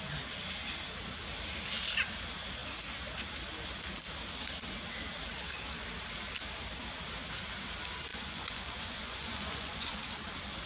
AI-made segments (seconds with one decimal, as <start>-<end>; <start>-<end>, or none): 8.1-10.0